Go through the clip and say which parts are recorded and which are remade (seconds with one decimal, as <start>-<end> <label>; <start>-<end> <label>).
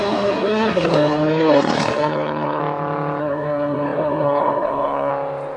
0.0-2.6 remade; 2.6-3.2 recorded; 3.2-5.1 remade; 5.1-5.6 recorded